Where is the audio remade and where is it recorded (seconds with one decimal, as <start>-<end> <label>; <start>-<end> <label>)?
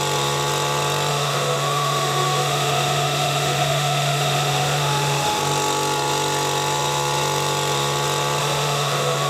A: 0.0-1.1 recorded; 1.1-5.4 remade; 5.4-8.4 recorded; 8.4-9.3 remade